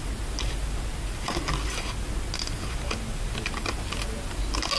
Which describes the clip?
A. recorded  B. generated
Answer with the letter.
A